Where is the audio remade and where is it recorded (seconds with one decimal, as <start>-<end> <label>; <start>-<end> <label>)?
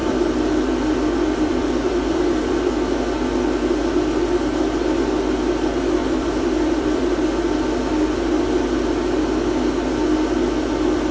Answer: 0.0-2.7 remade; 2.7-6.0 recorded; 6.0-7.1 remade; 7.1-11.1 recorded